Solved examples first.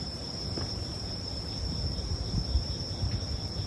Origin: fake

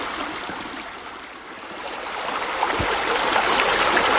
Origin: fake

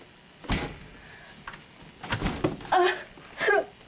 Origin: real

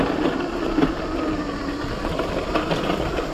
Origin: real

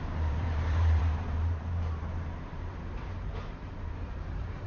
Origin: fake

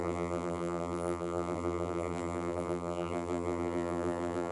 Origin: fake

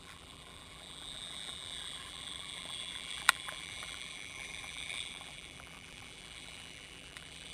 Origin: fake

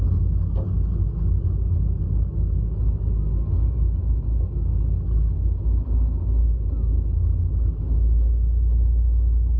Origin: real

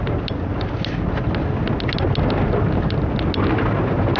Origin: real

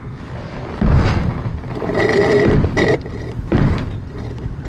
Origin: fake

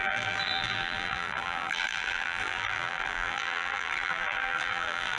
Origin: fake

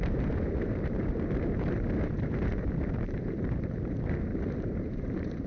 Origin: fake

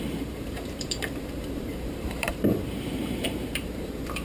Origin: fake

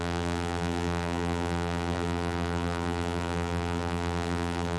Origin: fake